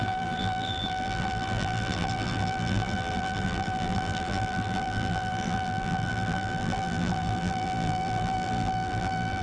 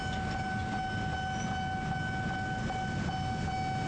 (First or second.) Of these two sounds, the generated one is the first